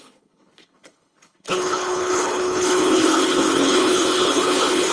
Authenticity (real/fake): fake